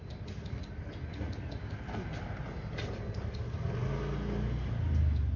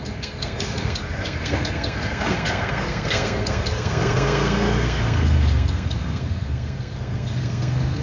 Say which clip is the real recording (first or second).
first